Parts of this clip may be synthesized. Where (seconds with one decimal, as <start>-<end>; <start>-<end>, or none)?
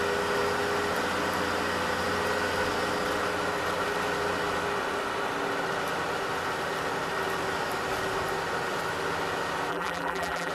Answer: 9.7-10.5